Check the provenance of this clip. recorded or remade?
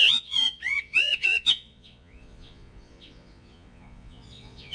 remade